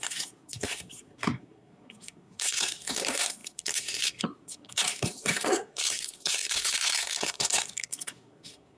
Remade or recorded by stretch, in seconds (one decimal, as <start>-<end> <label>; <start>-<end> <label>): 0.0-8.8 remade